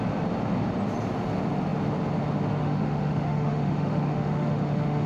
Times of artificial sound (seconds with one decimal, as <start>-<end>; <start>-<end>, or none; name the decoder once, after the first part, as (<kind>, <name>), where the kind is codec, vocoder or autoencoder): 2.6-5.1 (autoencoder, DAC-VAE)

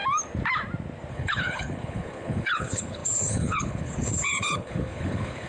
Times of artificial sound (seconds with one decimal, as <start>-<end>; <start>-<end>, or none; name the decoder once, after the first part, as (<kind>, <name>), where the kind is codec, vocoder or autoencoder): 1.1-5.5 (codec, HILCodec)